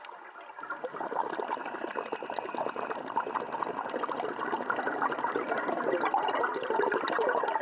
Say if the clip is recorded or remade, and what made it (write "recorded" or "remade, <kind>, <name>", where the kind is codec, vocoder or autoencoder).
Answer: recorded